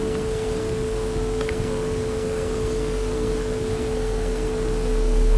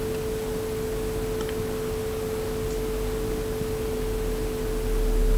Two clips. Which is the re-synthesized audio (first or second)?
first